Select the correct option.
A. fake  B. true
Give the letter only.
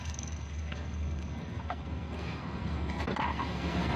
A